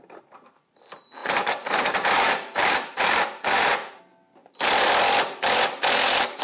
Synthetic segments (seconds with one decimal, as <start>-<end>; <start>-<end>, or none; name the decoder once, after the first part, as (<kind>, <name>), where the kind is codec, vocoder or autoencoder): 1.2-4.0 (vocoder, BigVGAN v2)